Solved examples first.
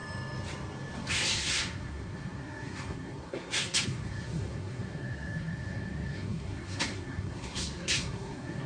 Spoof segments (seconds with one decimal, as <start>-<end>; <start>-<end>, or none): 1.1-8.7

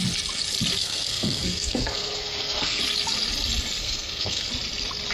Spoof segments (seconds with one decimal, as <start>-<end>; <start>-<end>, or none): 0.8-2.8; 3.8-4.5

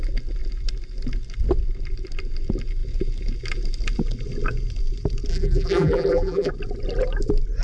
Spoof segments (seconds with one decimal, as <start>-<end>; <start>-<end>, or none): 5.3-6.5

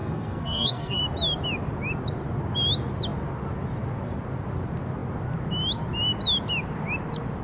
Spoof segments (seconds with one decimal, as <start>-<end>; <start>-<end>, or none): 0.0-1.0

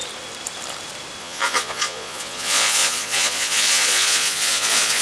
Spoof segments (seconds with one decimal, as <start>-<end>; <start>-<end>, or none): 1.2-5.0

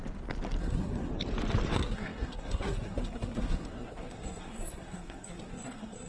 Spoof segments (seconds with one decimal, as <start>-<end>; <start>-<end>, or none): 0.6-1.1; 1.7-6.1

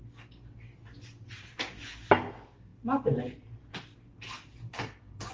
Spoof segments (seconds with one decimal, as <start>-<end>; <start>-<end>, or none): 4.7-5.3

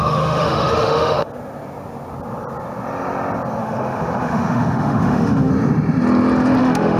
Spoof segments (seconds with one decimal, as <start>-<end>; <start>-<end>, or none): 0.0-1.3; 3.6-5.5; 6.6-7.0